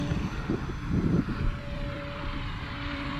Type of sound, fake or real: fake